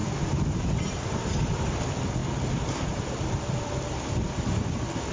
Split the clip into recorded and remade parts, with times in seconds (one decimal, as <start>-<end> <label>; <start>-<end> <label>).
0.0-5.1 recorded